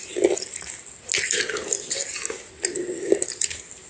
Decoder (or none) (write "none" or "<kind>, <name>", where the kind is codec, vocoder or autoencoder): none